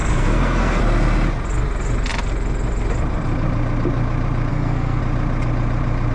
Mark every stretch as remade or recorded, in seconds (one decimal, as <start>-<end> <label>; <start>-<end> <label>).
0.0-0.8 remade; 0.8-4.5 recorded; 4.5-5.0 remade; 5.0-6.1 recorded